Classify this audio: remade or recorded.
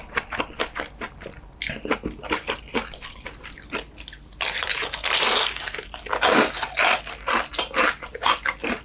recorded